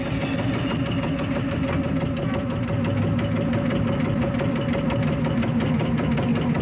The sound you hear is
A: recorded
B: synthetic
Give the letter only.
A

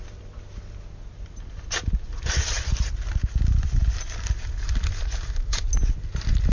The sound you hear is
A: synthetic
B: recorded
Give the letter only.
B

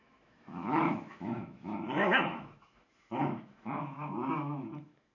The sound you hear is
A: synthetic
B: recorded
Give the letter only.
A